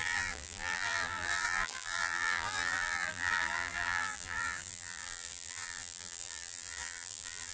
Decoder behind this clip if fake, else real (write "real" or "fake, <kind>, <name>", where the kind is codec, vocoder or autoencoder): fake, vocoder, BigVGAN v2